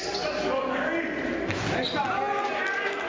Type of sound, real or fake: real